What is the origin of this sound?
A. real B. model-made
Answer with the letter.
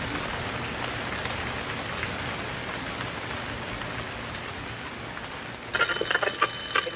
A